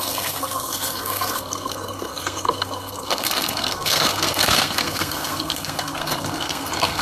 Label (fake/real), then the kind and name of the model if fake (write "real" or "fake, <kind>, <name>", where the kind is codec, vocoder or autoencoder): fake, codec, SNAC